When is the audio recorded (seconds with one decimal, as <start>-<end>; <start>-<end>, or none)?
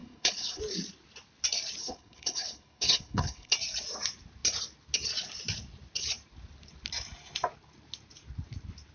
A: 0.6-1.8; 3.5-8.9